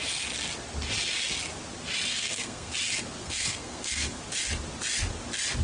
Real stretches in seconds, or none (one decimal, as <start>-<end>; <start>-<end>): 0.0-2.1; 2.7-3.2; 4.2-5.6